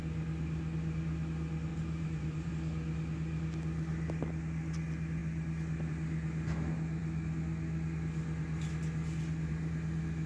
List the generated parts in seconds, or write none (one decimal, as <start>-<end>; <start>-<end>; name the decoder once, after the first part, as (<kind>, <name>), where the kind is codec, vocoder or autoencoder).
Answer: 1.7-2.5 (vocoder, BigVGAN v2)